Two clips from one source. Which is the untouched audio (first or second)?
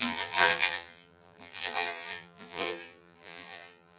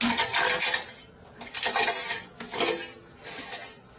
second